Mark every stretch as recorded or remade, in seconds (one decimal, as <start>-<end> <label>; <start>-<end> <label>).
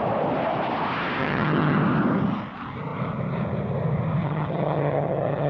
0.0-1.2 recorded; 1.2-1.8 remade; 1.8-4.2 recorded; 4.2-5.5 remade